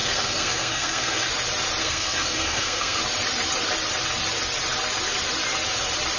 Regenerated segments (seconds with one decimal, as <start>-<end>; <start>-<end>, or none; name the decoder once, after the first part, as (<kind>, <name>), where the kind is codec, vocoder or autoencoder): 0.0-1.3 (codec, SNAC); 1.8-3.0